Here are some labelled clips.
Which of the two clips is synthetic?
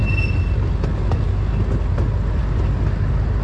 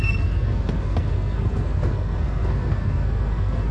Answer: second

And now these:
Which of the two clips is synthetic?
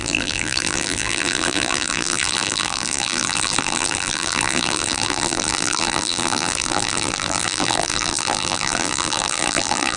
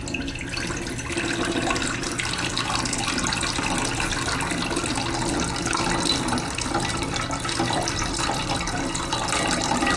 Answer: first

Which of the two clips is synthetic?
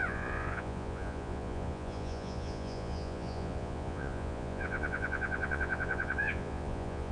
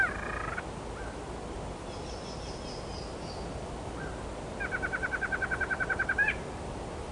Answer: first